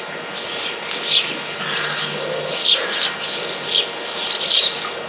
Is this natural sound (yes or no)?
yes